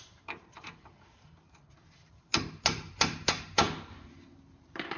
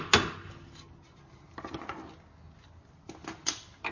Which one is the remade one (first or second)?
first